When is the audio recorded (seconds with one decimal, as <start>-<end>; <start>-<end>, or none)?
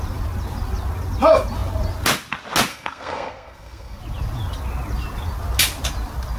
0.0-2.7; 4.0-6.4